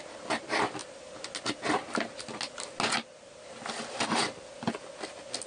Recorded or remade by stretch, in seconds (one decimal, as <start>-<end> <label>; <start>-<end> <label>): 0.0-5.5 recorded